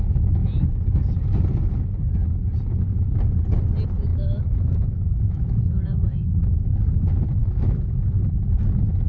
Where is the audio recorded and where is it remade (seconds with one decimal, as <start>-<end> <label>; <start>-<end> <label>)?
0.0-4.1 recorded; 4.1-6.3 remade; 6.3-7.4 recorded; 7.4-8.0 remade; 8.0-9.1 recorded